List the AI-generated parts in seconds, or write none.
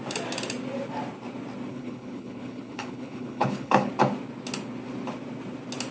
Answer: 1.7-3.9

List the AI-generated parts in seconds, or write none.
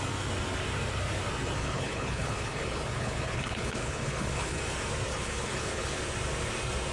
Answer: 1.6-4.6; 5.1-6.0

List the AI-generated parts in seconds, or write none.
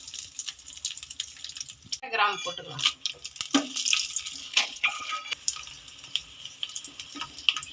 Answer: 4.4-5.1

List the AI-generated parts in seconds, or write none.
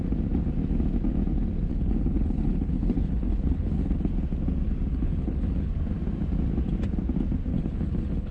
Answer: 1.7-4.1; 4.9-5.7; 7.5-8.3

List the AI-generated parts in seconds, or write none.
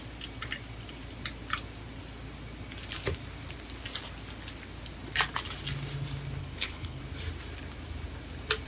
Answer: 6.4-7.0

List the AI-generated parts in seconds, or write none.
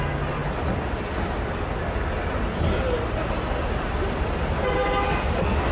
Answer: none